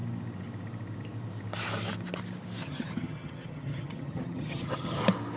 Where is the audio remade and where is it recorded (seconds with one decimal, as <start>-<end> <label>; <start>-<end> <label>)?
0.0-2.6 recorded; 2.6-5.0 remade; 5.0-5.4 recorded